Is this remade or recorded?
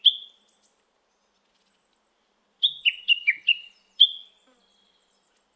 recorded